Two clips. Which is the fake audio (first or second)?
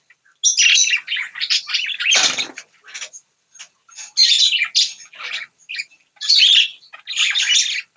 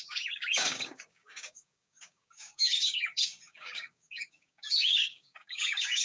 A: second